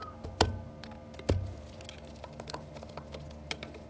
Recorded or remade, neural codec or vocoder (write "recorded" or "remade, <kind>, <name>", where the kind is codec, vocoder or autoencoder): recorded